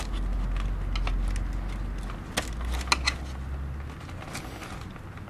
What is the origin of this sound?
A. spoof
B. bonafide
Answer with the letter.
B